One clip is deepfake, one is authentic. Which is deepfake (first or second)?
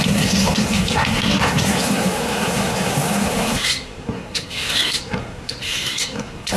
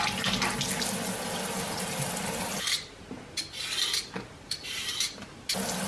first